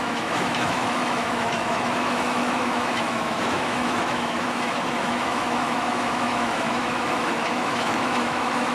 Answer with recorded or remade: remade